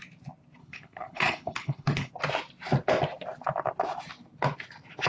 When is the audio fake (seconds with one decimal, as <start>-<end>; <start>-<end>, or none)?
0.6-2.1